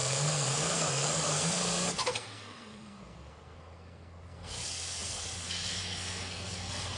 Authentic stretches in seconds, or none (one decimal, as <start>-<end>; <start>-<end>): none